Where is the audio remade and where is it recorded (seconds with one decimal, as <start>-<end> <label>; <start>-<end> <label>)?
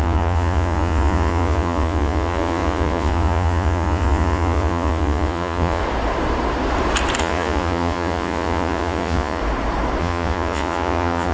0.0-5.8 remade; 5.8-7.2 recorded; 7.2-9.4 remade; 9.4-10.0 recorded; 10.0-11.3 remade